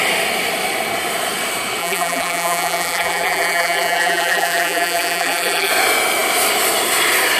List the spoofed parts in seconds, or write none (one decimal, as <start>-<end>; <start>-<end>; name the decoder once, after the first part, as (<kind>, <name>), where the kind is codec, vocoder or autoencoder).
1.8-5.7 (vocoder, BigVGAN v2)